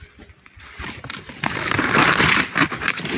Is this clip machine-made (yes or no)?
no